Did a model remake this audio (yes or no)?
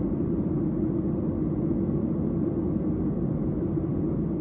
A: no